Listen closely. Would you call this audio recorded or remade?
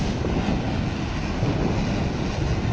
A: recorded